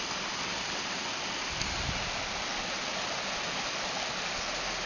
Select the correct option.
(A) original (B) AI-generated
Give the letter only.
A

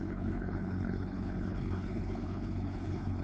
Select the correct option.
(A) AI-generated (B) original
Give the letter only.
A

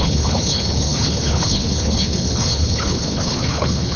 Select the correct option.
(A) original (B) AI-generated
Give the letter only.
B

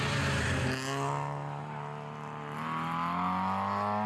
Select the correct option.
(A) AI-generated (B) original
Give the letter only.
B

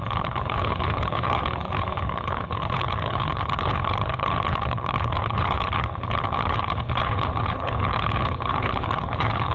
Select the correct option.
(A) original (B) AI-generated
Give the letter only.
B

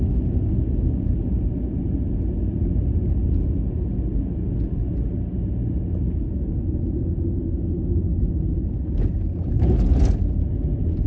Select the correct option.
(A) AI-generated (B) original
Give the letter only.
B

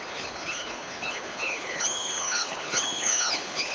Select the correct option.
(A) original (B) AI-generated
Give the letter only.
B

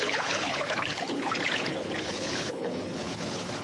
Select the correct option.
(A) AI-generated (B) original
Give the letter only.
A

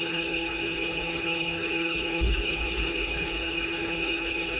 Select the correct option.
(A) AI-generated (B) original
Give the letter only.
A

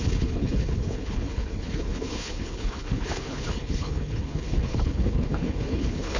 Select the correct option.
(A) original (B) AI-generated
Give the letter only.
B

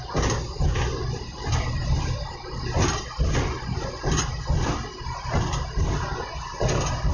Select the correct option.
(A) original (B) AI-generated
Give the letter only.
A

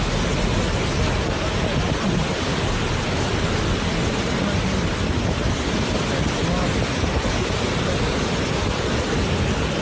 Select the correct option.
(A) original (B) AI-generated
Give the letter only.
A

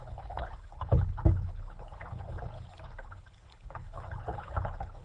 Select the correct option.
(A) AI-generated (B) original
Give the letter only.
A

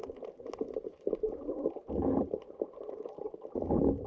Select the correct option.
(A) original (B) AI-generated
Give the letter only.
A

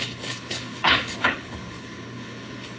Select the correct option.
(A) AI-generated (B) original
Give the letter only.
A